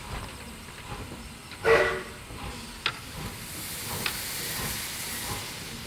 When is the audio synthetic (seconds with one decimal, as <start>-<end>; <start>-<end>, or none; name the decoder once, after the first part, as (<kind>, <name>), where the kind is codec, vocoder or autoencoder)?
none